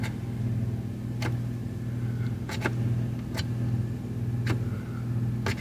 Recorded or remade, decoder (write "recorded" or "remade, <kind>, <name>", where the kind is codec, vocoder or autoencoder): recorded